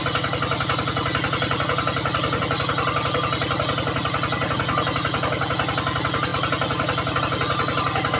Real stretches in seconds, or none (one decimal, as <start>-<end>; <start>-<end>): 0.0-8.2